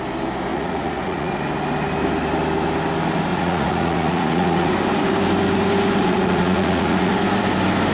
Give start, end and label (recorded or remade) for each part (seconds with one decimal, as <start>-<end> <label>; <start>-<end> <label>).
0.0-0.5 recorded; 0.5-1.3 remade; 1.3-3.3 recorded; 3.3-4.7 remade; 4.7-6.0 recorded; 6.0-7.1 remade; 7.1-7.9 recorded